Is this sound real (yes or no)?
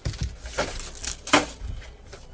yes